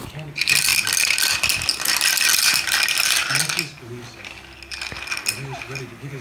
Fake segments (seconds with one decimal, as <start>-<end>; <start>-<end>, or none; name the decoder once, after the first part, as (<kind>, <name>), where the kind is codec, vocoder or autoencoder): none